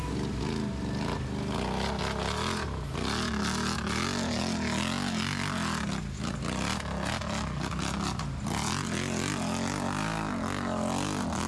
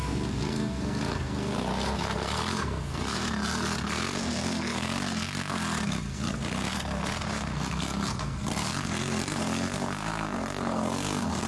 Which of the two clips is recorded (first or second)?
first